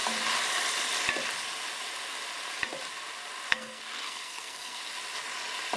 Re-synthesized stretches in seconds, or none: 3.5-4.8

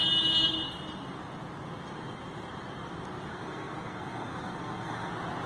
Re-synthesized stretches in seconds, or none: 3.3-5.1

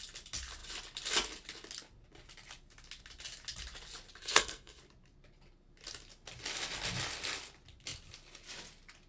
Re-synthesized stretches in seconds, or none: 4.2-4.8

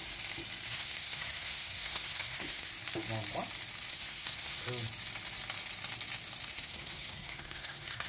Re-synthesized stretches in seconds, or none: 0.7-2.7; 3.9-4.6; 6.5-8.1

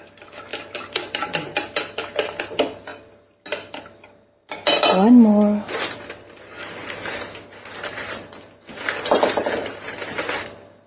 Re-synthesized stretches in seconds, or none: none